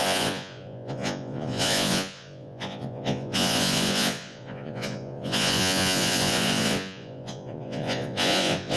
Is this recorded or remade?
remade